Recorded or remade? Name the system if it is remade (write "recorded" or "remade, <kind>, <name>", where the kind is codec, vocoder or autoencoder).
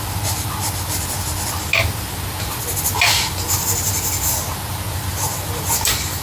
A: recorded